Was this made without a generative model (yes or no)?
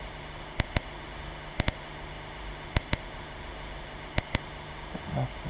no